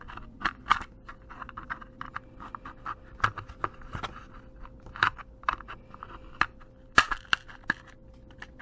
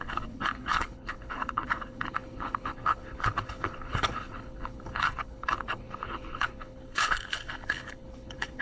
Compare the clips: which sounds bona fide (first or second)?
first